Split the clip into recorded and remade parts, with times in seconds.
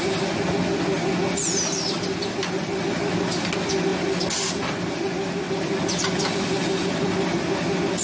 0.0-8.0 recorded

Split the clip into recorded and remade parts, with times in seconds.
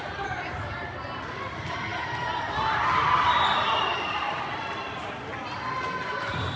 0.0-6.6 recorded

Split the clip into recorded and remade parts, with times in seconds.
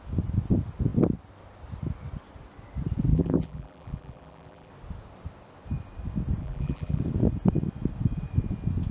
0.0-3.1 recorded; 3.1-4.7 remade; 4.7-6.4 recorded; 6.4-7.0 remade; 7.0-8.9 recorded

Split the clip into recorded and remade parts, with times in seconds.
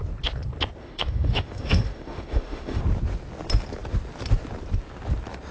0.0-0.8 recorded; 0.8-2.8 remade; 2.8-5.5 recorded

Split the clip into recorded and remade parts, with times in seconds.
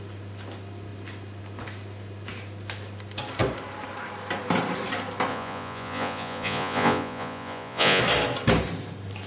0.0-5.3 recorded; 5.3-8.0 remade; 8.0-9.3 recorded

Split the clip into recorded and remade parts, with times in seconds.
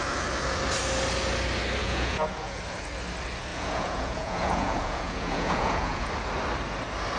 0.0-1.8 recorded; 1.8-2.6 remade; 2.6-3.5 recorded; 3.5-6.1 remade; 6.1-7.2 recorded